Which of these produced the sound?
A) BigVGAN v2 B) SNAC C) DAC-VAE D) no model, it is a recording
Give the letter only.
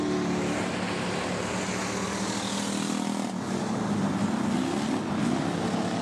D